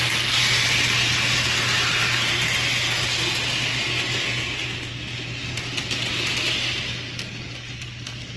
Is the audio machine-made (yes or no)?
no